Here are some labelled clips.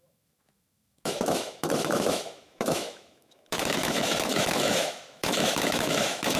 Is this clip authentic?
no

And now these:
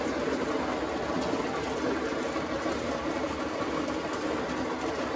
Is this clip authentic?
yes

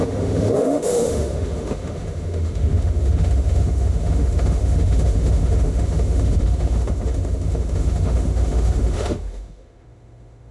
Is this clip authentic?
no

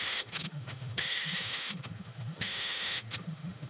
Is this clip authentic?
no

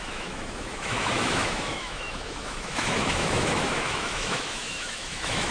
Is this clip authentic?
no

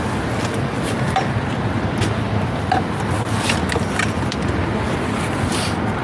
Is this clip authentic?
yes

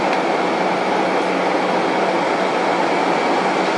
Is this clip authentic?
yes